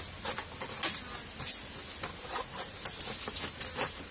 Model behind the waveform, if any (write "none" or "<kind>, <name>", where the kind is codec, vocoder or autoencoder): none